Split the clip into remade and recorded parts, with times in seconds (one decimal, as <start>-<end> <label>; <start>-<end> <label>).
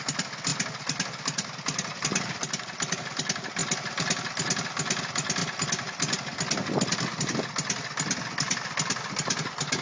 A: 0.0-9.8 recorded